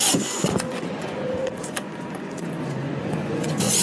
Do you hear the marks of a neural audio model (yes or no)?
yes